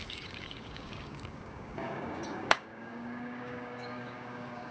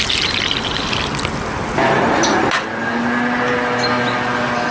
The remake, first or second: first